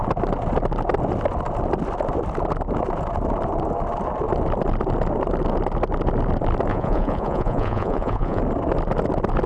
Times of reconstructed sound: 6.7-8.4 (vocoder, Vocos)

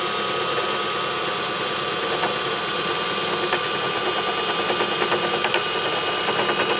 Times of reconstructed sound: none